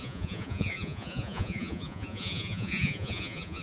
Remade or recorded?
remade